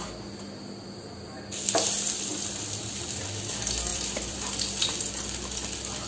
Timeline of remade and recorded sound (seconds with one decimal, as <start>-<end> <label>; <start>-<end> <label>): 0.0-2.3 recorded; 2.3-2.9 remade; 2.9-3.9 recorded; 3.9-4.9 remade; 4.9-6.1 recorded